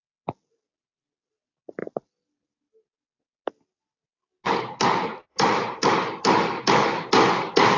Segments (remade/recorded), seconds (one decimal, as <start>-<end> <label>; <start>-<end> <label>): 0.0-5.3 recorded; 5.3-5.9 remade; 5.9-7.8 recorded